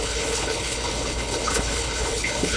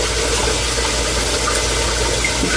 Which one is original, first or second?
second